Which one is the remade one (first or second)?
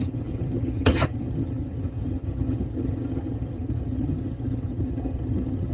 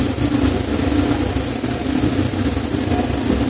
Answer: first